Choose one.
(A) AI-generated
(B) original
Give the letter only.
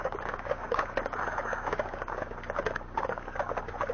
A